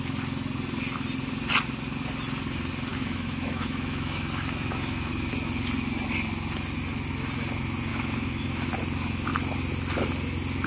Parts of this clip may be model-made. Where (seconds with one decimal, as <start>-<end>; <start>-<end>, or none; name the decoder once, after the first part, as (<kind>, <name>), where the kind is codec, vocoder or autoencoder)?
2.9-5.1 (autoencoder, DAC-VAE); 7.9-8.7